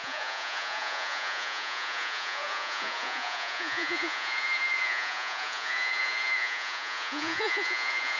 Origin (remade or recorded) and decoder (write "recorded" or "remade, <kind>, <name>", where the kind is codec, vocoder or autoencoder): remade, vocoder, Vocos